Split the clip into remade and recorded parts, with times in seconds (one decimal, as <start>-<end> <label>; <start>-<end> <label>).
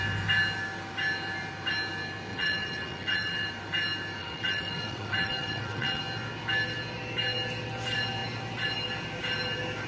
0.0-2.3 recorded; 2.3-3.5 remade; 3.5-4.2 recorded; 4.2-6.0 remade; 6.0-9.9 recorded